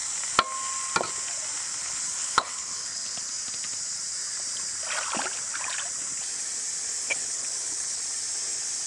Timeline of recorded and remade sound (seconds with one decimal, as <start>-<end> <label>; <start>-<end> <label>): 0.0-1.8 recorded; 1.8-3.3 remade; 3.3-7.1 recorded; 7.1-8.0 remade; 8.0-8.9 recorded